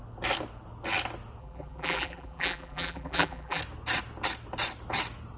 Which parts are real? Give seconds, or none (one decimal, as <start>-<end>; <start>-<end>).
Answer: 0.0-1.4; 3.6-5.4